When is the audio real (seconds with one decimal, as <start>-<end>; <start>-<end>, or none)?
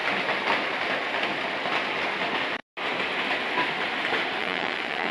0.0-4.4